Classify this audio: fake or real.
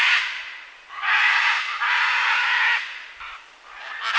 real